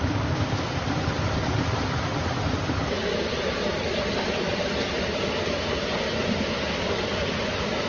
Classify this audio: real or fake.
real